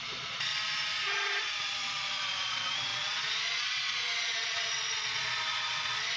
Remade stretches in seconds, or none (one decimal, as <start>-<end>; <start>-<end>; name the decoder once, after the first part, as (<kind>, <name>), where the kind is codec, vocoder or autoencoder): 0.0-0.5 (vocoder, Vocos); 1.6-6.2